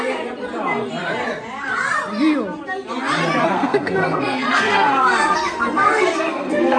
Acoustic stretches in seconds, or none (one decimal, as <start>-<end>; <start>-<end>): 0.0-3.4